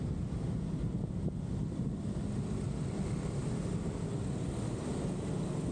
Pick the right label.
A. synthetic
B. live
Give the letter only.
B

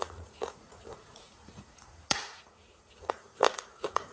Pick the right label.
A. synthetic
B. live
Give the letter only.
A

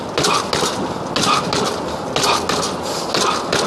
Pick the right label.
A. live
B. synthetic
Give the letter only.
A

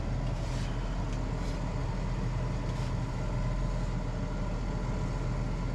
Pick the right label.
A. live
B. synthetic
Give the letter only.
A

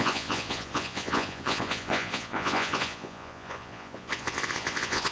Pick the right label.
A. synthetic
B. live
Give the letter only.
A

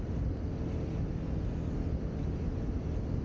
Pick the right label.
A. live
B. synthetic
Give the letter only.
A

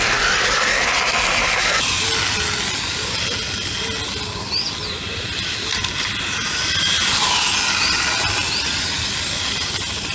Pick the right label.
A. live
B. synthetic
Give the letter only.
A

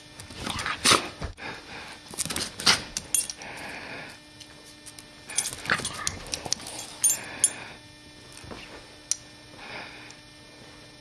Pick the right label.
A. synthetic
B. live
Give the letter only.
B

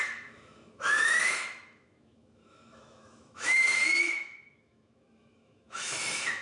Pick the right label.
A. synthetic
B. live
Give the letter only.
A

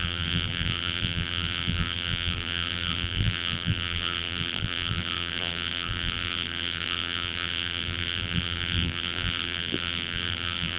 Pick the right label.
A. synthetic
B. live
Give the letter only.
A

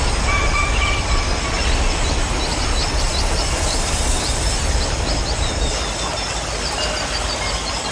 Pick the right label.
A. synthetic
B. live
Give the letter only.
B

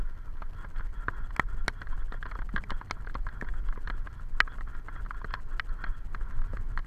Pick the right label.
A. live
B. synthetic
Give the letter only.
A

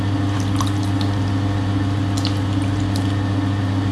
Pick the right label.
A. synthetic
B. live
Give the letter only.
B